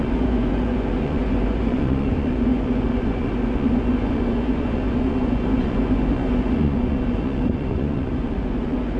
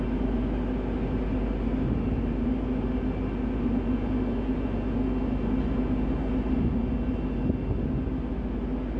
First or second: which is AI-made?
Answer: first